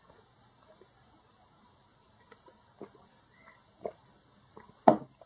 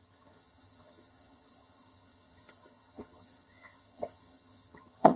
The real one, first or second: first